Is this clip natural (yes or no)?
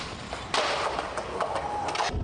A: yes